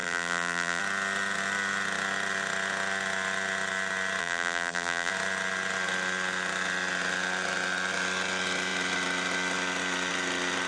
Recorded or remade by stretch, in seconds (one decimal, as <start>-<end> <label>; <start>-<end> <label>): 0.0-0.8 remade; 0.8-4.2 recorded; 4.2-5.1 remade; 5.1-10.7 recorded